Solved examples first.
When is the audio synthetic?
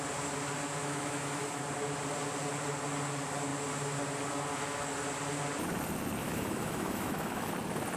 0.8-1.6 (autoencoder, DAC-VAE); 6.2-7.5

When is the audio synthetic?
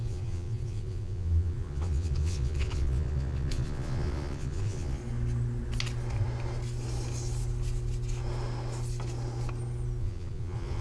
0.0-5.0 (vocoder, Vocos); 10.0-10.8